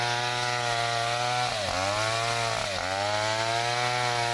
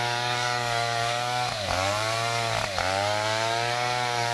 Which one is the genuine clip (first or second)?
first